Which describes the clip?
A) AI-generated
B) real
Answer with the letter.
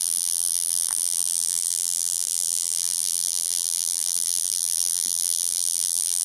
A